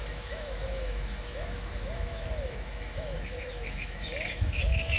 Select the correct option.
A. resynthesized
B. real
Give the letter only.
A